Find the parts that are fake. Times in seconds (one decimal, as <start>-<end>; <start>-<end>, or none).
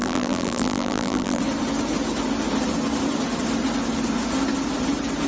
0.0-1.4